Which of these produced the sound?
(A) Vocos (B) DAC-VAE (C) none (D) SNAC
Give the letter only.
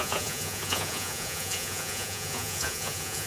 A